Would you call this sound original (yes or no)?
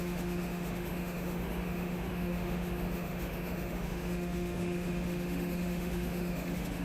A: no